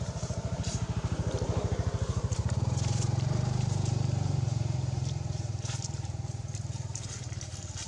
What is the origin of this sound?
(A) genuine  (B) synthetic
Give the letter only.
B